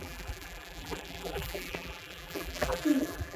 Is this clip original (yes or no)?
no